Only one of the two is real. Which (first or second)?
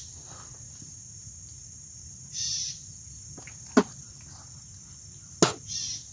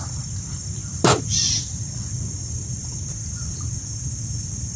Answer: first